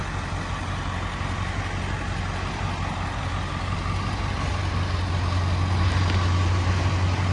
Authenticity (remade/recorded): recorded